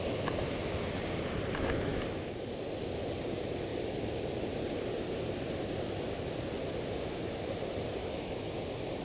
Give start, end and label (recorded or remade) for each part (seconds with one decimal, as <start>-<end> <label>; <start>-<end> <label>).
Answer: 0.0-8.0 recorded; 8.0-8.5 remade; 8.5-9.0 recorded